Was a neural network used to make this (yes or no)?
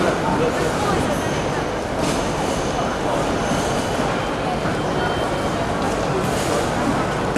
no